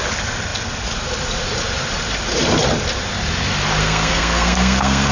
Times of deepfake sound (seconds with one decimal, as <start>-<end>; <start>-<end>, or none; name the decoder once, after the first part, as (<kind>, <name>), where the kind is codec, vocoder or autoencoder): 3.8-5.1 (codec, SNAC)